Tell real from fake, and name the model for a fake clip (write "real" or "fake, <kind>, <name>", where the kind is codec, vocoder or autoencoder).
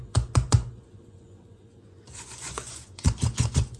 fake, vocoder, Vocos